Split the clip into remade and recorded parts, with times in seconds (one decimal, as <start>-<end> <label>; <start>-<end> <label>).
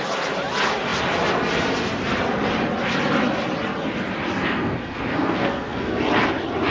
0.0-4.4 recorded; 4.4-6.0 remade; 6.0-6.7 recorded